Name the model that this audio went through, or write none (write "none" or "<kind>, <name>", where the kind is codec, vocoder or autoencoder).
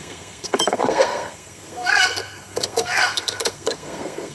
codec, SNAC